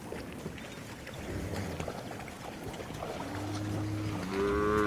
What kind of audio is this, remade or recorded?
recorded